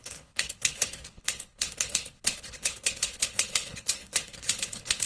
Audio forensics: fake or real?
fake